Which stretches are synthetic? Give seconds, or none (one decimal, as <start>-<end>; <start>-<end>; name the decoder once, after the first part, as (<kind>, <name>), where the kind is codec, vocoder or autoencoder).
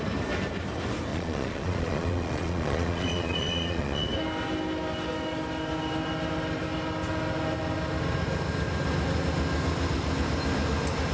1.1-4.1 (vocoder, Vocos)